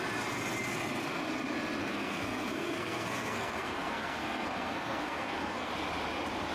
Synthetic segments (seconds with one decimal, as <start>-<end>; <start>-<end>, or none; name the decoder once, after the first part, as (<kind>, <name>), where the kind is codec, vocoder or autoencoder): 1.8-5.7 (codec, SNAC)

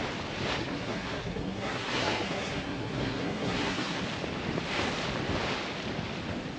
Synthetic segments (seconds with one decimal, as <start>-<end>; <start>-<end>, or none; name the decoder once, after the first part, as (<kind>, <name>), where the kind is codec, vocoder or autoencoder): 0.6-4.0 (codec, SNAC)

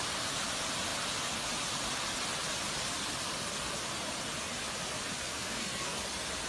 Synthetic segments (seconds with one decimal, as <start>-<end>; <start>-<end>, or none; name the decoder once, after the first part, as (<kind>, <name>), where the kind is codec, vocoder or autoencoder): 5.2-6.0 (codec, SNAC)

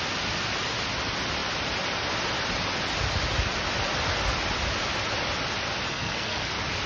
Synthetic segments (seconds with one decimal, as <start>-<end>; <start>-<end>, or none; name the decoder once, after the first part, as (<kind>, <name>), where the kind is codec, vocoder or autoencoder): 5.9-6.5 (codec, SNAC)

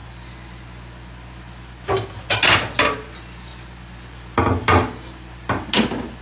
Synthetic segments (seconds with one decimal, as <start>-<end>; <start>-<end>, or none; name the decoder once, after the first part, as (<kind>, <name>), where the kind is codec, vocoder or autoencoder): none